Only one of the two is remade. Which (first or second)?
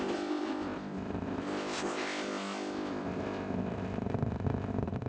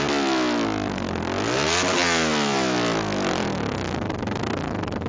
first